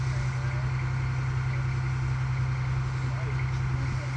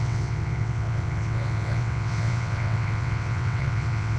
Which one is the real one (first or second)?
first